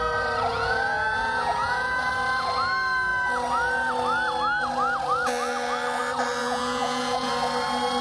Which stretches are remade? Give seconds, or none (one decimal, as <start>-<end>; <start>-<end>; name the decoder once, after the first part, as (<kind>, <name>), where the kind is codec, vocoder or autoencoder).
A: 0.5-2.1 (vocoder, Vocos); 6.4-7.3